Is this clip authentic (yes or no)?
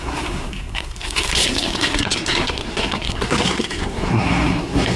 no